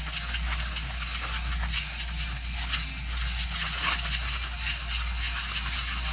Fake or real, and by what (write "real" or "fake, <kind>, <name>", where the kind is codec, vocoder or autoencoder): real